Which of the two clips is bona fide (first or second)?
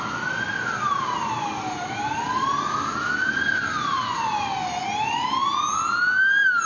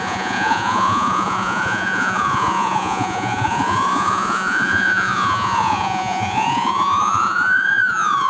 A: first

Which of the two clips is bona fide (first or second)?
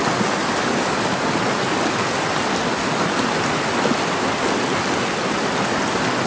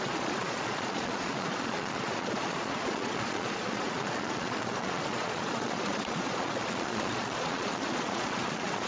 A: first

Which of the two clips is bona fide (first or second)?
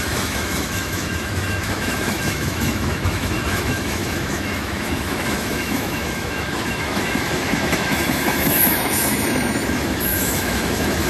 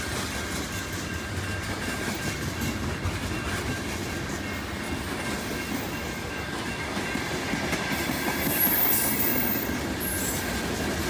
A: second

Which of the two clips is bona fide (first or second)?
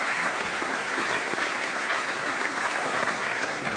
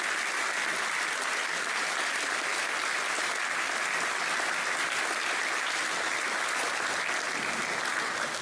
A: second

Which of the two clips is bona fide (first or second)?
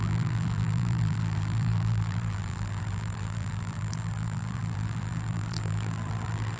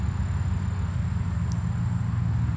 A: second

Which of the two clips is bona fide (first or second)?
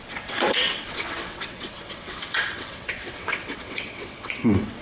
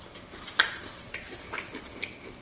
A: second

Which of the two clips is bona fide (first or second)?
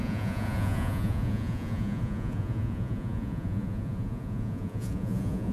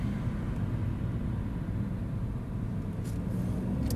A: second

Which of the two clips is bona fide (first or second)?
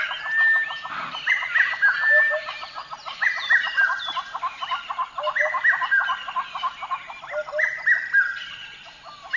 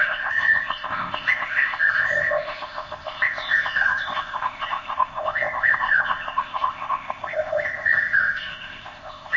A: first